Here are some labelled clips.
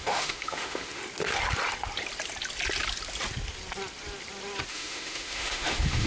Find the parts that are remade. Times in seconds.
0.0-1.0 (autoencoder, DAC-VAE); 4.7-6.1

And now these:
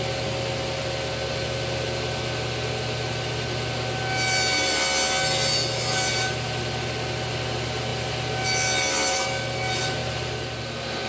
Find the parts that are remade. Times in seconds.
none

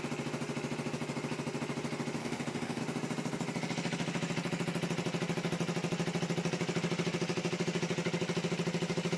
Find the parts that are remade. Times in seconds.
2.2-2.8 (autoencoder, DAC-VAE)

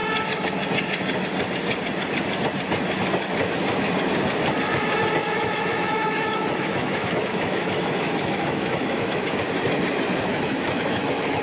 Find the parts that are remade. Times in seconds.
5.2-9.4 (autoencoder, DAC-VAE); 10.3-11.4

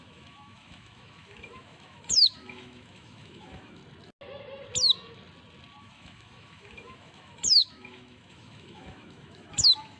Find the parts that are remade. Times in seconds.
0.0-3.8 (autoencoder, DAC-VAE); 5.8-10.0

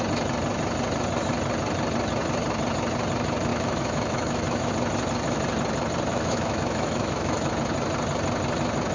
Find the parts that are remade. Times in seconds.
3.5-4.7 (autoencoder, DAC-VAE); 6.1-7.5